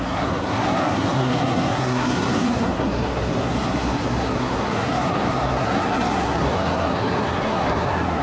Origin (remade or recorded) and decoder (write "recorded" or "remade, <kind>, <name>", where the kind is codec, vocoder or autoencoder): remade, codec, SNAC